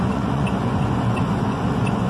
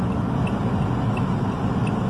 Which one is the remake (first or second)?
first